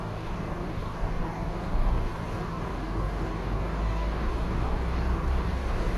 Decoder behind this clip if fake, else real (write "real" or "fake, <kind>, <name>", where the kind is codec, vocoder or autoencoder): fake, codec, DAC